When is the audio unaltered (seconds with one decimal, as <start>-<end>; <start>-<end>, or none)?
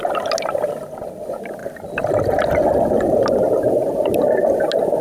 0.0-1.6; 4.6-5.0